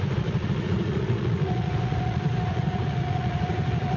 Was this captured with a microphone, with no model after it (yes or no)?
no